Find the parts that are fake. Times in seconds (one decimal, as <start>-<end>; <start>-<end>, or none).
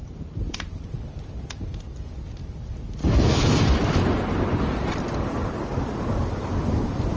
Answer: 3.0-3.6